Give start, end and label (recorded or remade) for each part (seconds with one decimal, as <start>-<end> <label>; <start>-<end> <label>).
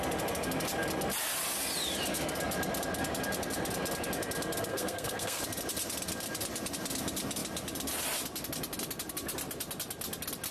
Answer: 0.0-4.7 recorded; 4.7-5.4 remade; 5.4-10.5 recorded